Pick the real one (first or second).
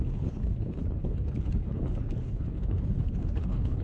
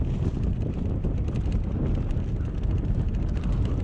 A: second